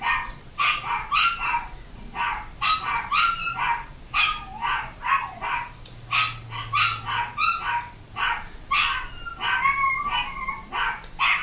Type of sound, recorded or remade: recorded